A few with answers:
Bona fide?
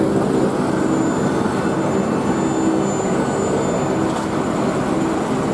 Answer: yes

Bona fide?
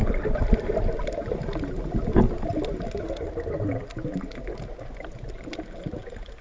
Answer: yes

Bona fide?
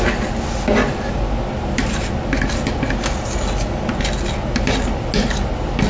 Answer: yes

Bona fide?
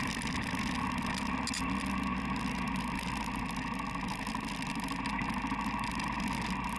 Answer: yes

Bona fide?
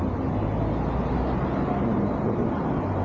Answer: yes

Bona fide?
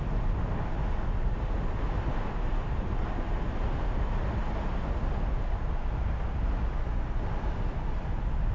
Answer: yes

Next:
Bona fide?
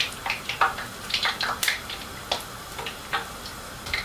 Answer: no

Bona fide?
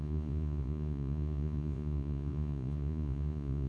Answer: no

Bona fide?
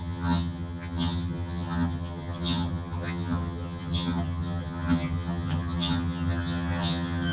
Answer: no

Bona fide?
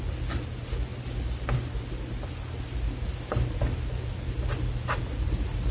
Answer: yes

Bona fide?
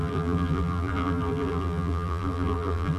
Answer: no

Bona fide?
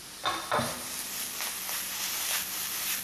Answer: yes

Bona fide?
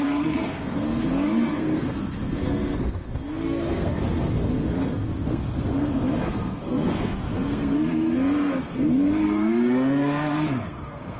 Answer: no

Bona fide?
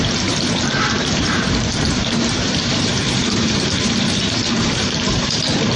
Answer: no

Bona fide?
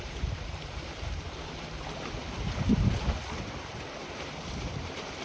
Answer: no